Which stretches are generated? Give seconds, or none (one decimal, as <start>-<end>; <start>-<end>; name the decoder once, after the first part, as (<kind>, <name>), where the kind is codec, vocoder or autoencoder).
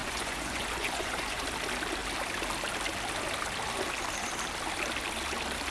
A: 0.0-1.4 (vocoder, Vocos)